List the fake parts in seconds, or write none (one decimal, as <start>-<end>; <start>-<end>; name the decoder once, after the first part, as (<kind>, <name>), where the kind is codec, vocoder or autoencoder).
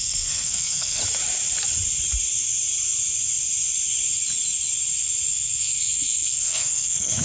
0.0-1.0 (codec, SNAC); 5.3-7.2